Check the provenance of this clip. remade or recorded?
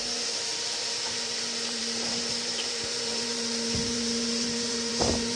remade